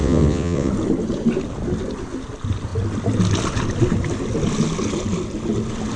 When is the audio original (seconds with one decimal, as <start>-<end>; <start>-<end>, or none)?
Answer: 0.7-6.0